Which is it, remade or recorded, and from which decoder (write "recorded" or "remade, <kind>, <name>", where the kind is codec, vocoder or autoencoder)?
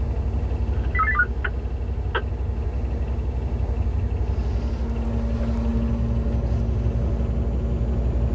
recorded